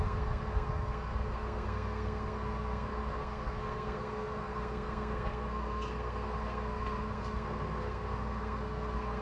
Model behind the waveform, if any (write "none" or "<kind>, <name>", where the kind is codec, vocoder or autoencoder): codec, SNAC